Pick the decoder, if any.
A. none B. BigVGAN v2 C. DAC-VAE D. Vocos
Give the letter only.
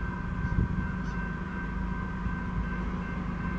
A